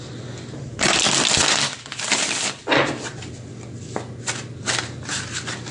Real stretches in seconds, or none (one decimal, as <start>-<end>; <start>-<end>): 0.0-5.7